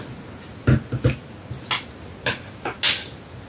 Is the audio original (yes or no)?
yes